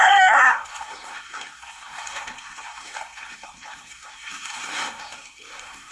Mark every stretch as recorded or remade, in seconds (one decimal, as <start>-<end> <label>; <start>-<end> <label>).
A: 0.0-5.9 remade